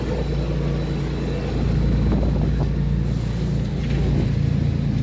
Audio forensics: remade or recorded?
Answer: recorded